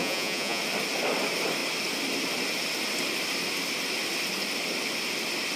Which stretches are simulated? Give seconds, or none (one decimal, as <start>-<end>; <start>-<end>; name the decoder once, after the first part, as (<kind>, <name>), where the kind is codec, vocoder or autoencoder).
0.0-0.6 (vocoder, Vocos)